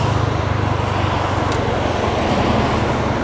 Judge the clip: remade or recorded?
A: recorded